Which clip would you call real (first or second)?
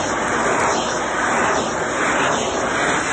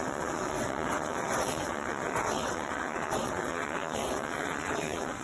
first